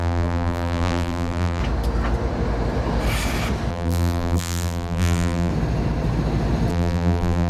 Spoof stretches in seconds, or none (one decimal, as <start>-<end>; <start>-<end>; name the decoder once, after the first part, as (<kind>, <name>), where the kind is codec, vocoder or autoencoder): 0.0-1.6 (vocoder, BigVGAN v2); 3.7-5.5; 6.7-7.5